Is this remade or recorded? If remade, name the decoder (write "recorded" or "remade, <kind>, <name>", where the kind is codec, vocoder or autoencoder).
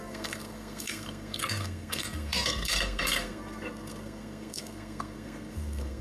remade, codec, SNAC